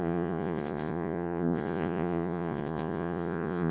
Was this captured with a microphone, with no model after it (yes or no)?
no